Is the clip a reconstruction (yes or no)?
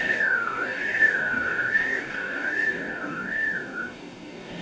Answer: yes